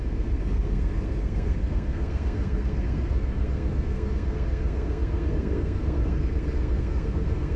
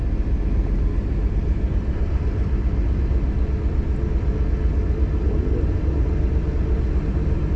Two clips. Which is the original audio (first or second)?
second